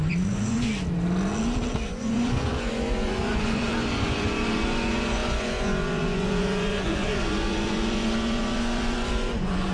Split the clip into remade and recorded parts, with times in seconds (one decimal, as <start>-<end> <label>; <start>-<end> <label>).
0.0-0.7 remade; 0.7-1.9 recorded; 1.9-9.7 remade